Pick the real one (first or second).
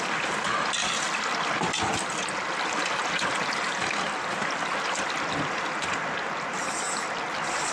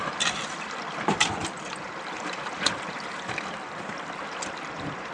first